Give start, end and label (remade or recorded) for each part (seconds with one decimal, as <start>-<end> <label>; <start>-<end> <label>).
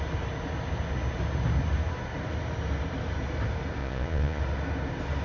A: 0.0-3.8 recorded; 3.8-4.4 remade; 4.4-5.2 recorded